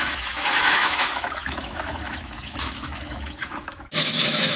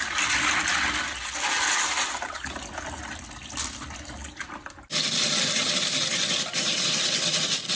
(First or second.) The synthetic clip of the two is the first